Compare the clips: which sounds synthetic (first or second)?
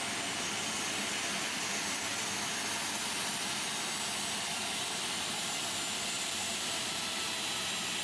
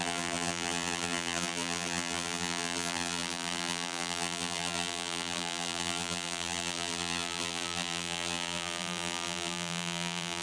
second